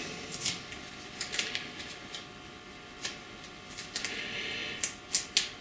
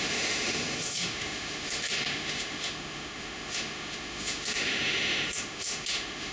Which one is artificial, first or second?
second